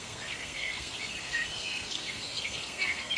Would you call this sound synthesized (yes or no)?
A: yes